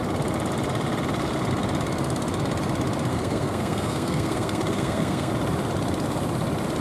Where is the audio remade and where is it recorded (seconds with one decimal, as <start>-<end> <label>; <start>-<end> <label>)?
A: 0.0-3.1 recorded; 3.1-5.3 remade; 5.3-6.8 recorded